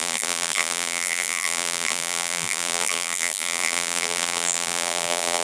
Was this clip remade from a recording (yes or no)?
yes